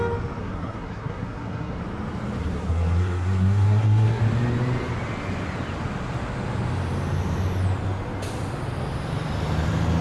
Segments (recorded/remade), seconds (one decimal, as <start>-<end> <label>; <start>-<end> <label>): 0.0-0.4 recorded; 0.4-1.8 remade; 1.8-2.4 recorded; 2.4-4.2 remade; 4.2-10.0 recorded